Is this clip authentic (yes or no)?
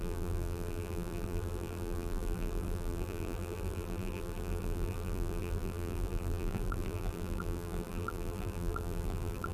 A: no